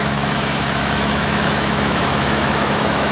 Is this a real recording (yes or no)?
no